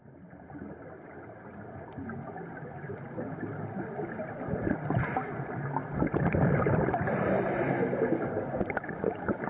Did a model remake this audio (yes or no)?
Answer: no